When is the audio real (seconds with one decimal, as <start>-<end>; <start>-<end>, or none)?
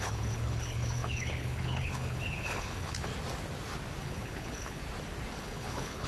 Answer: 3.1-4.0; 4.8-5.4